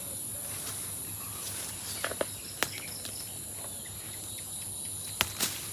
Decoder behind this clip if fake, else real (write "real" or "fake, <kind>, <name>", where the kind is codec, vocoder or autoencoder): real